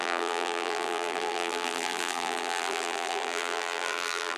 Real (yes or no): no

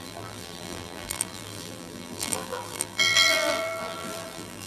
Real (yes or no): no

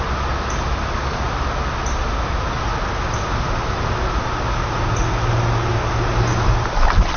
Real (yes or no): yes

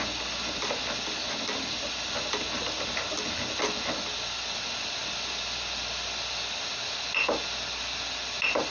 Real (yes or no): yes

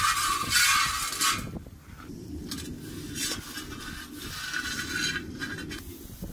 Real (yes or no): yes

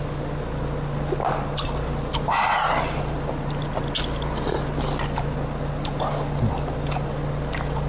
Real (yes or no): yes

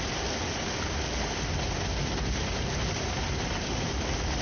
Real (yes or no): yes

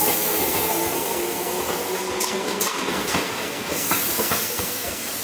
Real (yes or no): no